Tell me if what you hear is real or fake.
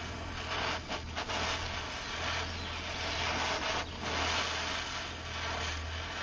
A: real